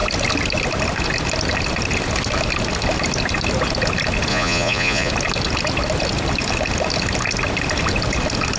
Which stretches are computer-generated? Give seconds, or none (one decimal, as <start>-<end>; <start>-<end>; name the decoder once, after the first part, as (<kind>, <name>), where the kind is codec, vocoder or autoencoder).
4.3-5.1 (vocoder, Vocos)